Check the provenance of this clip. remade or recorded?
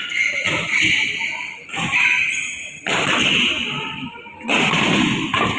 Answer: recorded